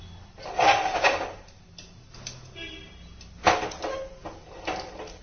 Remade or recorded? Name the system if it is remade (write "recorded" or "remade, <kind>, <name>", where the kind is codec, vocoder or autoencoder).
recorded